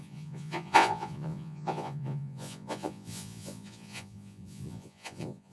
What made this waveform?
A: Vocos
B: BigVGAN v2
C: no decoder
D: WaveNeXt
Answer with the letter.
A